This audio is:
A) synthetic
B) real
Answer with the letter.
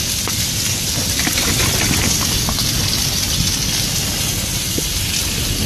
B